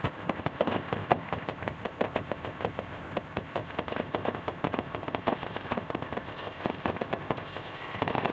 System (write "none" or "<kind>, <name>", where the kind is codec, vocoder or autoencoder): codec, ZipCodec